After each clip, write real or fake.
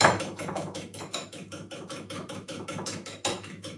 fake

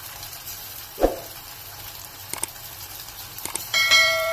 fake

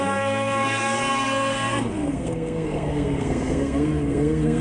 fake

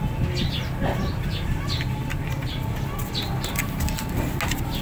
real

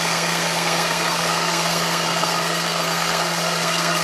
fake